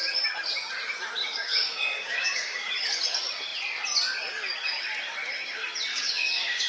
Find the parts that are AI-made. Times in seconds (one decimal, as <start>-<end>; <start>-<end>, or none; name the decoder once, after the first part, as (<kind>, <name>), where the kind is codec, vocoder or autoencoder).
1.2-2.7 (codec, DAC); 5.9-6.7